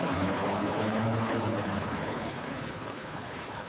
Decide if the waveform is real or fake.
fake